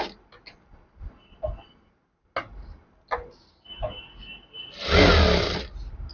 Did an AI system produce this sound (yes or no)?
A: no